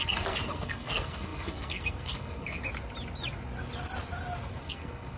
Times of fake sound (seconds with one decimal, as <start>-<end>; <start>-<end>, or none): 0.0-2.6; 4.6-5.2